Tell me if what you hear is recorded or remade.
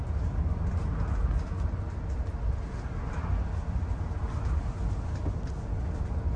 recorded